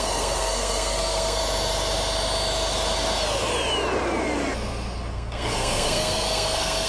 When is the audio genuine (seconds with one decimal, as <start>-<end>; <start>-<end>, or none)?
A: 1.4-5.1